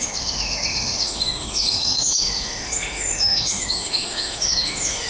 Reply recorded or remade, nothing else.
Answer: remade